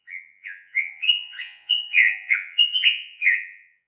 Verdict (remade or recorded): remade